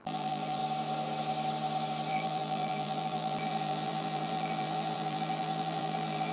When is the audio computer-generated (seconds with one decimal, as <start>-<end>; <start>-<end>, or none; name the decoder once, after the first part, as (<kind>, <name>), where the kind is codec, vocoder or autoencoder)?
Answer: 0.0-0.6 (vocoder, BigVGAN v2); 2.1-6.3

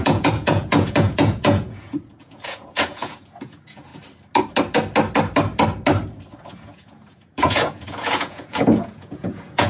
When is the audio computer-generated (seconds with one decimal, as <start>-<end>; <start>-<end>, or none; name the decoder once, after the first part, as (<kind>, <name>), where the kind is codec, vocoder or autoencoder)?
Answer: 0.0-3.9 (vocoder, Vocos); 6.4-9.7

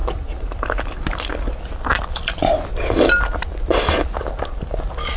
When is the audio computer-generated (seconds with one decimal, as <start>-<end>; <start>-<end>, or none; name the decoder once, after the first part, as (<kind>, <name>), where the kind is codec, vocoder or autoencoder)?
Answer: 0.0-3.1 (vocoder, BigVGAN v2)

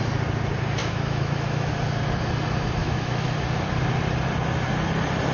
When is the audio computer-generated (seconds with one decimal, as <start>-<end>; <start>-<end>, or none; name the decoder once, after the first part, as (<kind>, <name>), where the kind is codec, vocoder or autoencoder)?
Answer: 0.8-1.7 (autoencoder, DAC-VAE); 2.8-3.4

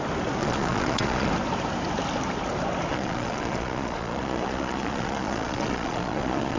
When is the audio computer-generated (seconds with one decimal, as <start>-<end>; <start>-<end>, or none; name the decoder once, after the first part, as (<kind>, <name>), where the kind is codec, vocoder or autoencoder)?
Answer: 0.4-1.3 (vocoder, Vocos); 2.9-6.6

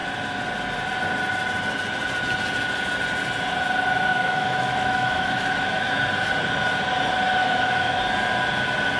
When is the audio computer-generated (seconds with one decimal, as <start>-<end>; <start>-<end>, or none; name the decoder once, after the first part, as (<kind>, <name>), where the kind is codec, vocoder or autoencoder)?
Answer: 4.1-5.9 (autoencoder, DAC-VAE); 7.4-8.0